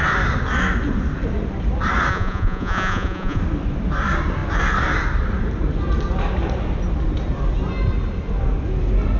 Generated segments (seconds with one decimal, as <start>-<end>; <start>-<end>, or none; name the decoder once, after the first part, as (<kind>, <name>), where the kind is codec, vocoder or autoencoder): 2.1-3.4 (vocoder, Vocos)